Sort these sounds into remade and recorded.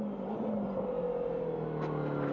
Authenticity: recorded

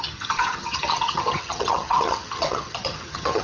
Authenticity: remade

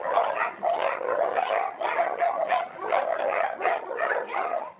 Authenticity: remade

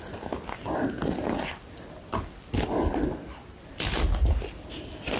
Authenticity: recorded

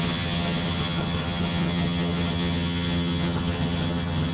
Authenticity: remade